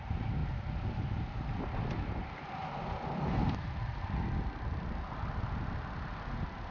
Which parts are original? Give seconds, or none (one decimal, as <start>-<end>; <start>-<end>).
0.0-6.7